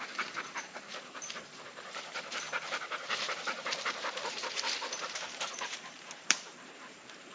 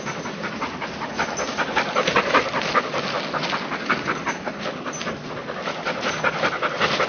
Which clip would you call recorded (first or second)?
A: second